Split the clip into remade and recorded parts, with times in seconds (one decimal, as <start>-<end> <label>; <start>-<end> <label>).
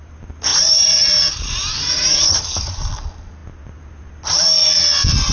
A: 0.0-0.5 recorded; 0.5-2.9 remade; 2.9-5.3 recorded